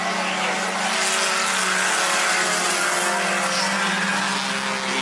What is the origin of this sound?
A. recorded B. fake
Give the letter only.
A